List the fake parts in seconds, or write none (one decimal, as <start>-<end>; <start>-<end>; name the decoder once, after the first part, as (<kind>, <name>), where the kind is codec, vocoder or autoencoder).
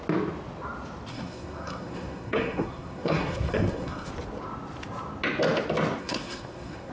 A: 1.1-4.1 (codec, SNAC); 6.0-6.9